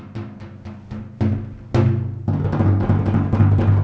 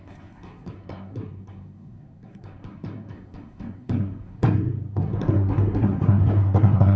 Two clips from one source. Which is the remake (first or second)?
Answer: second